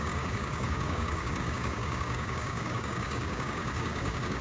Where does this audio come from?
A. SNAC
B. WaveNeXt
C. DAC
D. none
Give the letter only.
C